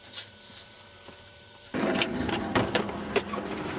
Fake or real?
fake